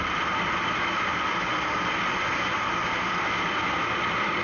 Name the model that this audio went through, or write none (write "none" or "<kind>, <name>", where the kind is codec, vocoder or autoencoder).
none